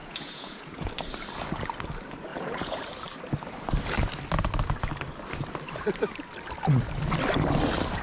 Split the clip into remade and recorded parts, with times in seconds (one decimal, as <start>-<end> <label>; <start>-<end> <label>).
0.0-0.9 remade; 0.9-2.3 recorded; 2.3-2.8 remade; 2.8-8.0 recorded